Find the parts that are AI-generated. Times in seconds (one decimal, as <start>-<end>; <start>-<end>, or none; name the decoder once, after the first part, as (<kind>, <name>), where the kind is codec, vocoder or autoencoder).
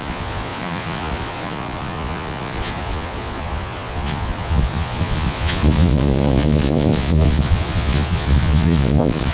0.0-9.3 (vocoder, Vocos)